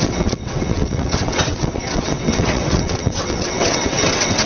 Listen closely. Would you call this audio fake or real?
fake